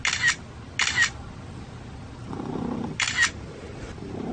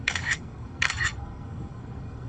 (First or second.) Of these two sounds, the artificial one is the second